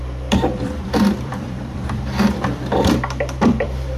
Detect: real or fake fake